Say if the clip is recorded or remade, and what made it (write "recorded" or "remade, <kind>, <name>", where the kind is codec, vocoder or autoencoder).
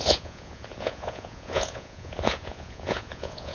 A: remade, vocoder, Vocos